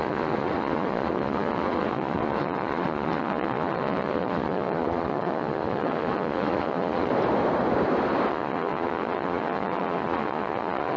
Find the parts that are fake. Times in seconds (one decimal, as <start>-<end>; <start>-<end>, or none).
0.0-7.1; 8.3-11.0